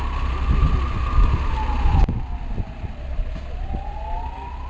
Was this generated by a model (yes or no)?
no